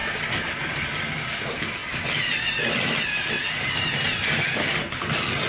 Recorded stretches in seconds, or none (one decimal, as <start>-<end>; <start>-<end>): 0.0-5.5

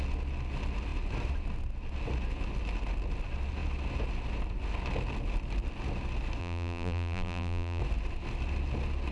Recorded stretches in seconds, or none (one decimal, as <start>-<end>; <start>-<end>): 0.0-6.4; 7.8-9.1

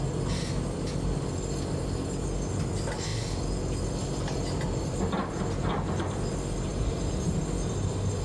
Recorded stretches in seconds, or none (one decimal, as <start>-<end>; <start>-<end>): 0.0-6.7; 7.4-8.2